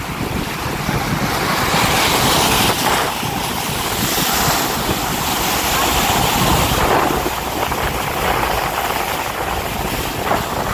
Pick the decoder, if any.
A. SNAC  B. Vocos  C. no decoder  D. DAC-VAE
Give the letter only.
C